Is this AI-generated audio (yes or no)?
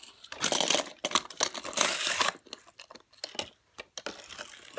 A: no